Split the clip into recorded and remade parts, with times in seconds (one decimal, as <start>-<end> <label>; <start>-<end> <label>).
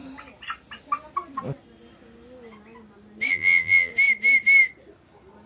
0.0-3.3 recorded; 3.3-3.9 remade; 3.9-5.5 recorded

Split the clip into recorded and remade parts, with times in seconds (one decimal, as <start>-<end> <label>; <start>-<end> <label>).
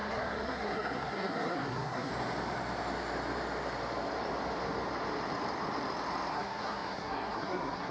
0.0-2.1 remade; 2.1-6.3 recorded; 6.3-7.9 remade